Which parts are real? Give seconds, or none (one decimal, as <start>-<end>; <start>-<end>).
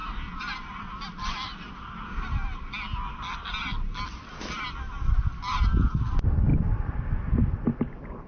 0.0-8.3